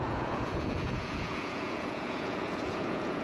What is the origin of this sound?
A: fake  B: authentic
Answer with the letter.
A